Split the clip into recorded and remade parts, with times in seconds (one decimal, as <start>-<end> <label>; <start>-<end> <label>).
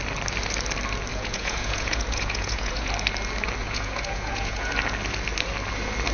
0.0-1.1 recorded; 1.1-2.9 remade; 2.9-3.6 recorded; 3.6-4.7 remade; 4.7-6.1 recorded